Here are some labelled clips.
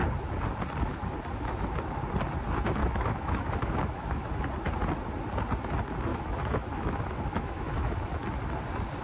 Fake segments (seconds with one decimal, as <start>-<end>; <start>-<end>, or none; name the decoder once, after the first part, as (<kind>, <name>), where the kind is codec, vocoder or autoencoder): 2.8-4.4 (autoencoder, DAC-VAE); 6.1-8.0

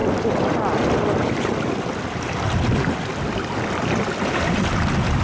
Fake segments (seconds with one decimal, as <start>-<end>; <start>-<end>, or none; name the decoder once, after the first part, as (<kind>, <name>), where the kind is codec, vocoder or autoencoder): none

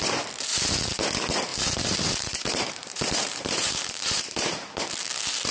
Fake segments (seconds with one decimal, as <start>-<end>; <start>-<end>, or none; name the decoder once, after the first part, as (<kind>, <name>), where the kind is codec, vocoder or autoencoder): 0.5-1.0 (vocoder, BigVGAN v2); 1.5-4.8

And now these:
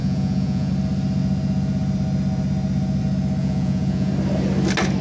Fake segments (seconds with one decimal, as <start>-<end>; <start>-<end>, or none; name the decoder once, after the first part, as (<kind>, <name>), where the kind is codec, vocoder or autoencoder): 0.0-0.7 (vocoder, Vocos); 3.4-4.1